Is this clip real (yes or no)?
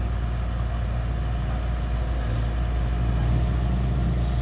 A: yes